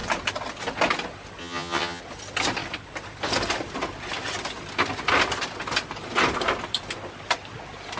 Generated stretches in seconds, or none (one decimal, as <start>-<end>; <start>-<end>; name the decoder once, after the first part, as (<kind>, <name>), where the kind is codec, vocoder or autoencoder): 1.4-2.0 (vocoder, HiFi-GAN)

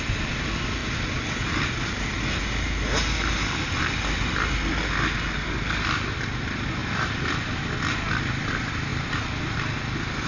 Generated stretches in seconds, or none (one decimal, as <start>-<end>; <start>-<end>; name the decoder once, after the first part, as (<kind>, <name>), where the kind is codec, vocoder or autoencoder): none

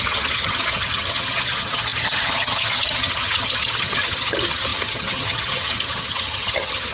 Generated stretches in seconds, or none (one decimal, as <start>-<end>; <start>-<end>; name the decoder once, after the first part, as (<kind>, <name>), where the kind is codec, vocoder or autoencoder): 0.0-6.9 (vocoder, HiFi-GAN)